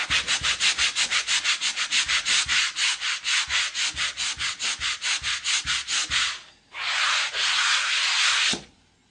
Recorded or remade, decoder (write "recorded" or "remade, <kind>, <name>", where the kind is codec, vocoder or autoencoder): recorded